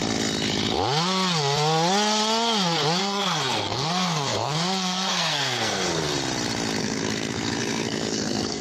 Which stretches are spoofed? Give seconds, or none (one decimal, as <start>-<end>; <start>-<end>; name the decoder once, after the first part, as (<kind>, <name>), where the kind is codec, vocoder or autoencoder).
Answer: 3.0-6.1 (codec, SNAC); 6.8-8.6

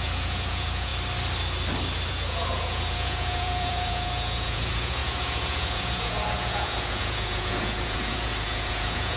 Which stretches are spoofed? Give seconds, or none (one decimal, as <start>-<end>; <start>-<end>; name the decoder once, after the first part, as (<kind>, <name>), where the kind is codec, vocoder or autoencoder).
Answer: 0.0-0.9 (vocoder, Vocos); 2.1-9.2

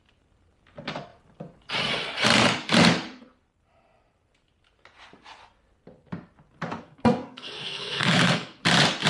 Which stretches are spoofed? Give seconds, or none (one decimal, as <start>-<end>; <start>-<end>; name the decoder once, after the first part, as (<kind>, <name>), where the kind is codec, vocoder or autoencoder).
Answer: 6.8-8.6 (codec, SNAC)

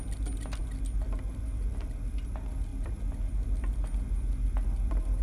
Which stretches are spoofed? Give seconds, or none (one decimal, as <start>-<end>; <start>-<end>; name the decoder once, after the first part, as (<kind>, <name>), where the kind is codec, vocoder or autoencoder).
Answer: none

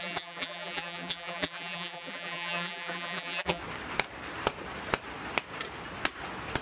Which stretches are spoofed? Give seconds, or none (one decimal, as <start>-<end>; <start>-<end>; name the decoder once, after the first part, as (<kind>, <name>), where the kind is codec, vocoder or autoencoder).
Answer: 0.0-3.6 (vocoder, BigVGAN v2)

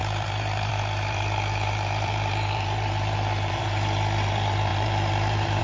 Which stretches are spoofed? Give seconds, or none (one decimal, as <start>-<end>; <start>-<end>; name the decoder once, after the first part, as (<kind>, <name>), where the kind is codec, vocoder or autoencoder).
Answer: 0.0-5.6 (vocoder, BigVGAN v2)

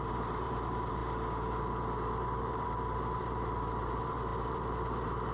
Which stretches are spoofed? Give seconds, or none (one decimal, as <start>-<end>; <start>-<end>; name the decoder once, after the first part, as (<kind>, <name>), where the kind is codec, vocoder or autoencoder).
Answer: 0.0-1.0 (vocoder, BigVGAN v2); 2.4-5.3